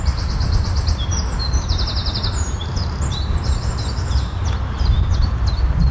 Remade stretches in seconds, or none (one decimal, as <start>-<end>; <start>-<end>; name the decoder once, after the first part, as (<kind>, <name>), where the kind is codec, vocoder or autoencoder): none